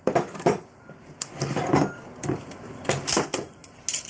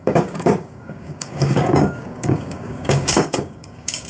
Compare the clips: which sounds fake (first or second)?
second